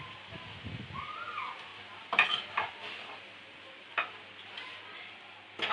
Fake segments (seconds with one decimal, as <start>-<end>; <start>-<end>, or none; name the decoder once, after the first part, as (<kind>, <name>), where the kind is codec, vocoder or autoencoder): none